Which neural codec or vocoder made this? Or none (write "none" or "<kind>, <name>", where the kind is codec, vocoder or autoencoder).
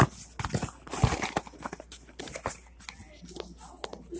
none